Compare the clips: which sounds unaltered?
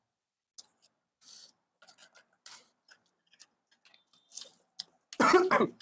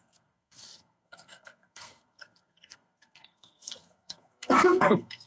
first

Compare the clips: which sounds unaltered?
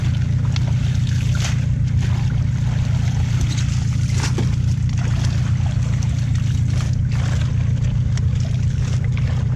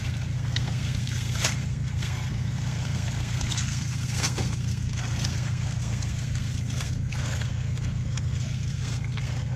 first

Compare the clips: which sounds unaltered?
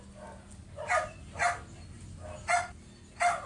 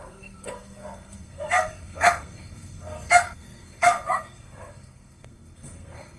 first